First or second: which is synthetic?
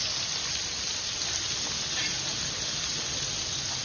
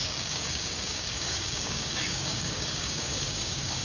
second